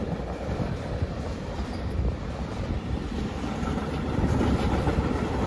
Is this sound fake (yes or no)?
yes